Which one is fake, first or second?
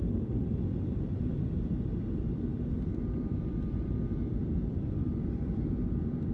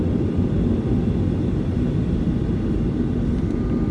first